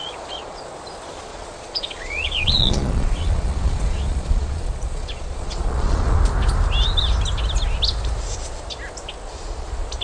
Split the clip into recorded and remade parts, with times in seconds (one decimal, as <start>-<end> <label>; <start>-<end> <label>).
0.0-0.6 remade; 0.6-1.3 recorded; 1.3-6.2 remade; 6.2-10.0 recorded